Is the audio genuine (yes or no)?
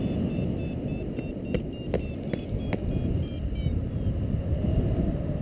yes